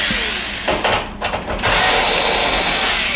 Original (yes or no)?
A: yes